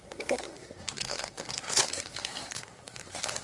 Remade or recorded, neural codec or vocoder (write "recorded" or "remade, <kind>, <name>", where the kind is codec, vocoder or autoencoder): remade, codec, SNAC